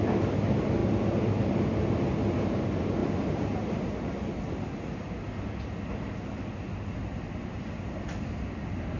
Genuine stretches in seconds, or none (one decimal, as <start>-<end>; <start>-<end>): 0.0-9.0